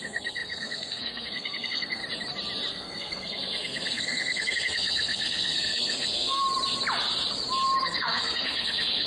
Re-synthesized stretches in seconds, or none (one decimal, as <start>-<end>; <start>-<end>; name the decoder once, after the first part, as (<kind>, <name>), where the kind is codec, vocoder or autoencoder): 0.0-2.0 (codec, SNAC); 2.7-6.4; 7.8-9.1